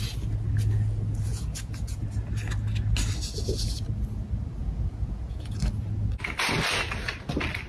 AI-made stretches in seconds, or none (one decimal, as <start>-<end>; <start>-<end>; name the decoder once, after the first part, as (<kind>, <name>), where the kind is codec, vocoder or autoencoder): 1.3-2.0 (vocoder, Vocos); 4.6-5.6